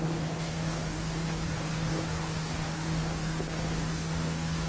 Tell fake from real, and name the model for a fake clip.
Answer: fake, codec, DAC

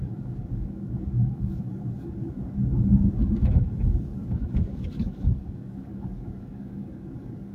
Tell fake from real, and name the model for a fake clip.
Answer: fake, codec, DAC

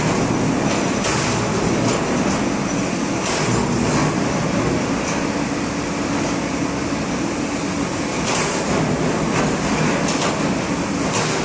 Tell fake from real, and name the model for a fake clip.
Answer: real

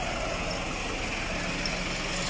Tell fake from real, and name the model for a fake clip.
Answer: real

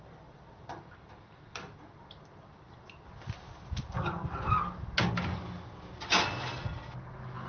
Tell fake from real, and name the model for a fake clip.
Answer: real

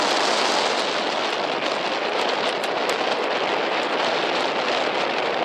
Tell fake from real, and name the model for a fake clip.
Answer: real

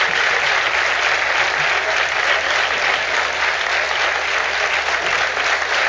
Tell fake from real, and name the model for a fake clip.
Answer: real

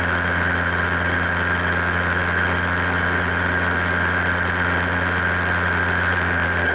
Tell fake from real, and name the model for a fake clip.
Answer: real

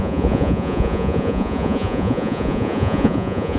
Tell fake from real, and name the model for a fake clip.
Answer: fake, vocoder, Vocos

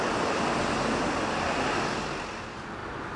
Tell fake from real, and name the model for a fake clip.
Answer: real